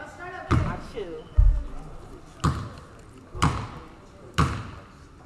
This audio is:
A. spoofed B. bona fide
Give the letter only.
B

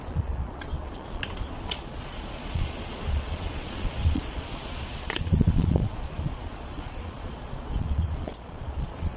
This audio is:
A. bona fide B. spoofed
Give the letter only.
B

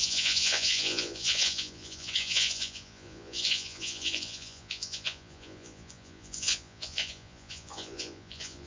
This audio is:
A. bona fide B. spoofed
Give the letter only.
B